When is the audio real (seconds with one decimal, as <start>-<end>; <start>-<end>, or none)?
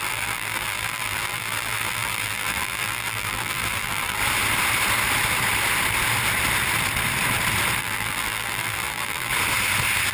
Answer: 4.2-7.8; 9.3-10.1